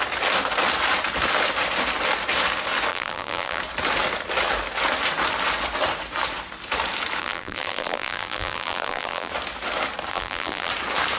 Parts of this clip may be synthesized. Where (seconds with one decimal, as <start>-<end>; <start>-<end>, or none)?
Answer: 2.9-3.6; 7.2-9.3; 10.1-10.7